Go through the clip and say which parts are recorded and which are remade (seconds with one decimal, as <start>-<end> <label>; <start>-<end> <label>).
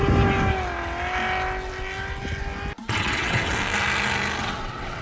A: 0.0-2.8 recorded; 2.8-3.5 remade; 3.5-4.4 recorded; 4.4-5.0 remade